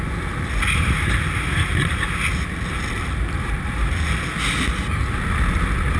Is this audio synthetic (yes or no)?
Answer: no